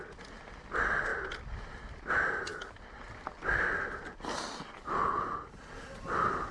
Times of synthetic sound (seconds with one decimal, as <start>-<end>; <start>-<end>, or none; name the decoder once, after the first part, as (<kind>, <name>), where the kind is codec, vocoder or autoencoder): none